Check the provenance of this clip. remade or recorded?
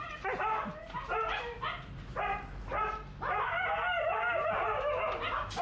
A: recorded